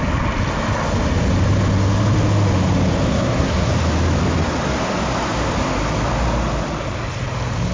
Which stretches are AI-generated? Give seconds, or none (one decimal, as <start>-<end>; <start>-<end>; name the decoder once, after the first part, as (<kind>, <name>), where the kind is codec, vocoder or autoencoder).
3.1-3.7 (codec, SNAC)